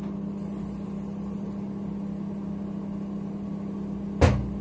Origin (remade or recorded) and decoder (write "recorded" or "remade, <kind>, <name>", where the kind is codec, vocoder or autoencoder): recorded